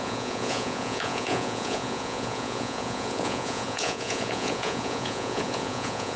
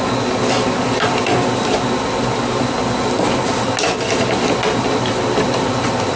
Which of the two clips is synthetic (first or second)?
first